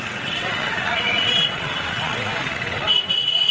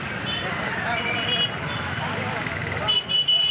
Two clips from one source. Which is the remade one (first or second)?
first